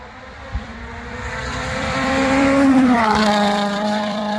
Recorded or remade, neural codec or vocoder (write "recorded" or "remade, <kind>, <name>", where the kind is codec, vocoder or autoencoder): remade, vocoder, BigVGAN v2